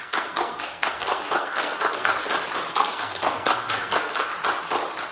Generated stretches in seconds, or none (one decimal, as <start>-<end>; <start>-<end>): 0.0-2.2; 2.7-4.3

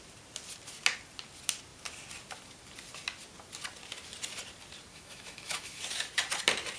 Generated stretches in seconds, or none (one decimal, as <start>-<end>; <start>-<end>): 4.9-5.8

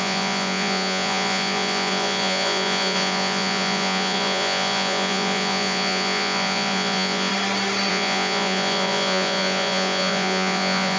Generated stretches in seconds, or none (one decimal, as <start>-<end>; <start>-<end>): 0.0-7.3; 7.9-11.0

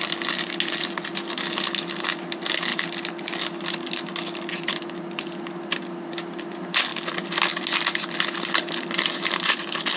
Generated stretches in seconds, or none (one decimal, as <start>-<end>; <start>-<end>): none

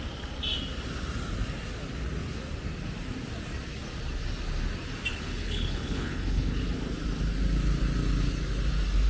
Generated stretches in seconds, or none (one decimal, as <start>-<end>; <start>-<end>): 5.1-6.6

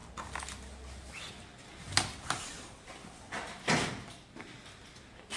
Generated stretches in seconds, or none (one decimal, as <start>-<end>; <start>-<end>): none

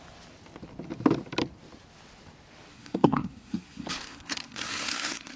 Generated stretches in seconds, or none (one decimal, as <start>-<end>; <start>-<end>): 2.7-5.4